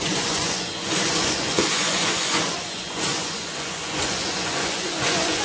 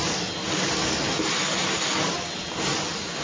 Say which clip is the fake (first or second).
first